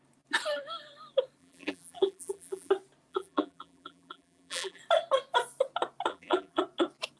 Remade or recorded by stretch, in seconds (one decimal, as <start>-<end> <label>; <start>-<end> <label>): 0.0-1.4 recorded; 1.4-2.7 remade; 2.7-3.1 recorded; 3.1-4.8 remade; 4.8-6.1 recorded; 6.1-6.6 remade; 6.6-7.2 recorded